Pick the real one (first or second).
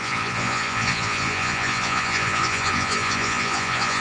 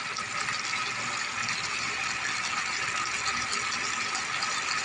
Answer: second